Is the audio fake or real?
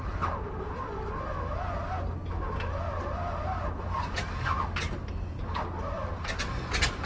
real